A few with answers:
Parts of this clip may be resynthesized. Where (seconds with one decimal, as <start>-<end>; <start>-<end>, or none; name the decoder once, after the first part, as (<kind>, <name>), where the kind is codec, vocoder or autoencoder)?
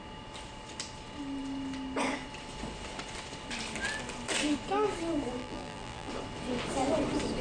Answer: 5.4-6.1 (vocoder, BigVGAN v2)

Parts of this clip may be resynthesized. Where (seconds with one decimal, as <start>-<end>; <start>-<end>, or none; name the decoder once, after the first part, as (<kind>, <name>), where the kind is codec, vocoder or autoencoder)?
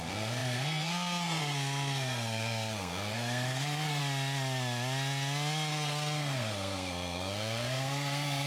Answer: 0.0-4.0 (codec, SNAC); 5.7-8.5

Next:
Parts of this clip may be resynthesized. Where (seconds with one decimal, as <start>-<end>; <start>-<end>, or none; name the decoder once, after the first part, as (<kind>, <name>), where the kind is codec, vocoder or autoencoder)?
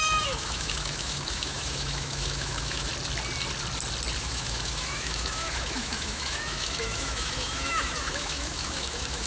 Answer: 0.0-2.9 (autoencoder, DAC-VAE); 4.2-9.3